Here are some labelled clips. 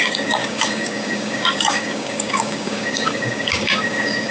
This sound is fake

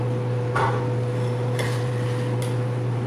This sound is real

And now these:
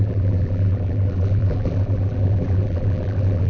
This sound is fake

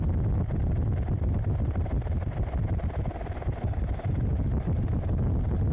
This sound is real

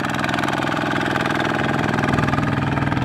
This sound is fake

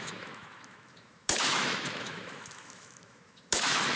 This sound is fake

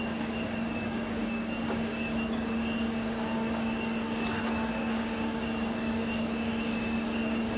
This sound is fake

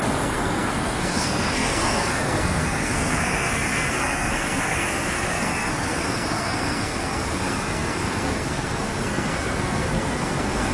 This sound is fake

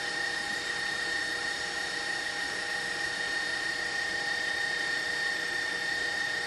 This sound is real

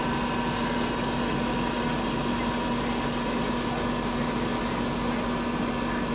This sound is real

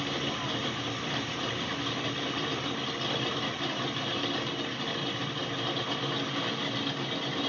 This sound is real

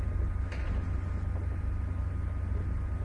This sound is real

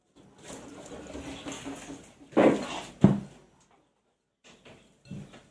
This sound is real